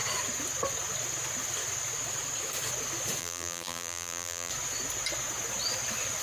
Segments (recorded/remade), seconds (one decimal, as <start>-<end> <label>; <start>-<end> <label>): 0.0-3.2 recorded; 3.2-4.5 remade; 4.5-6.2 recorded